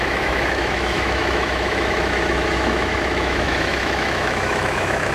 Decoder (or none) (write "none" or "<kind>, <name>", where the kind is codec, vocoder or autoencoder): autoencoder, DAC-VAE